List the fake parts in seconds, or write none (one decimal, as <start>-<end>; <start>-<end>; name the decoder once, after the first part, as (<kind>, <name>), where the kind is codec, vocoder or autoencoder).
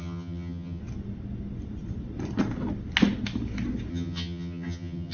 0.0-0.8 (vocoder, HiFi-GAN); 3.9-5.1